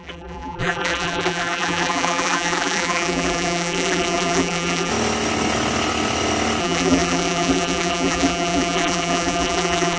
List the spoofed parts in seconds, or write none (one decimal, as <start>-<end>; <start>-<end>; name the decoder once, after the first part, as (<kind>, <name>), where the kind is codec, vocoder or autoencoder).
0.0-4.9 (vocoder, BigVGAN v2); 6.6-10.0